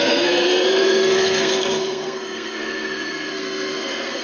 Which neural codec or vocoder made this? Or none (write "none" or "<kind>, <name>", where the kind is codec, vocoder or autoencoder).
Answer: codec, SNAC